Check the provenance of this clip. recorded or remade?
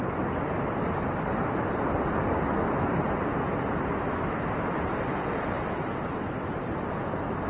recorded